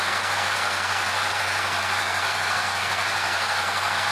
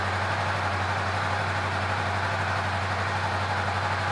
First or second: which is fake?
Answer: first